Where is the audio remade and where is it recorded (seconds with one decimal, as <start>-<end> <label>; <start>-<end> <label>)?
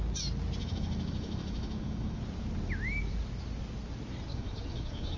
0.0-0.6 recorded; 0.6-2.2 remade; 2.2-4.3 recorded; 4.3-5.2 remade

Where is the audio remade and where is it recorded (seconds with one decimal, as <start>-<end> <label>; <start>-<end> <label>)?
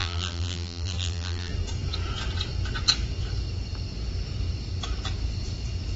0.0-1.5 remade; 1.5-6.0 recorded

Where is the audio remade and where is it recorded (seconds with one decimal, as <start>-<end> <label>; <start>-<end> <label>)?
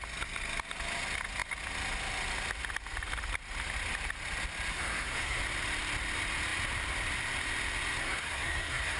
0.0-4.7 recorded; 4.7-5.4 remade; 5.4-8.0 recorded; 8.0-9.0 remade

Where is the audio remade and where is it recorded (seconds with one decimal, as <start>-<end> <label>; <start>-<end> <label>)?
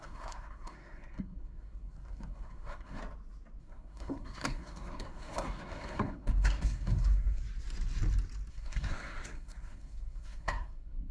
0.0-3.0 remade; 3.0-3.6 recorded; 3.6-7.4 remade; 7.4-8.5 recorded; 8.5-11.1 remade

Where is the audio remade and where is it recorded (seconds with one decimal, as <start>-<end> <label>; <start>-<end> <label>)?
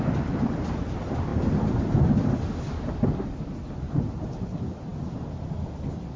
0.0-6.2 recorded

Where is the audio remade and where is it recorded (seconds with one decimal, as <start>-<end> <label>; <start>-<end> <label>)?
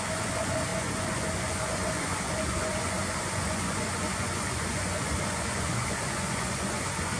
0.0-7.2 remade